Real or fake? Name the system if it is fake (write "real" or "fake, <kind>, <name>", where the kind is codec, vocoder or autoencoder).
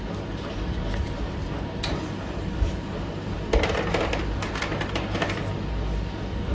real